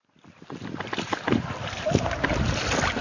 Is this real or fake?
real